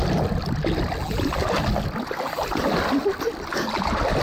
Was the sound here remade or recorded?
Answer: recorded